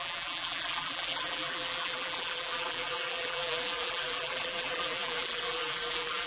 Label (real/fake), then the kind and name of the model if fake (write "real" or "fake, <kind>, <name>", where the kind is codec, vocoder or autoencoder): fake, vocoder, BigVGAN v2